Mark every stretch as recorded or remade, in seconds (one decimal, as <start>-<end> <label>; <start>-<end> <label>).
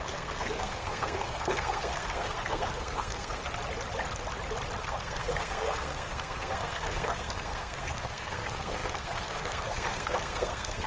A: 0.0-3.4 remade; 3.4-4.8 recorded; 4.8-10.9 remade